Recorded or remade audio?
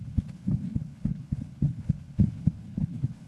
remade